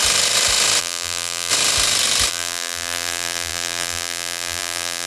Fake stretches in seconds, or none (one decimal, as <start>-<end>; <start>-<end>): 0.8-1.5; 2.3-5.1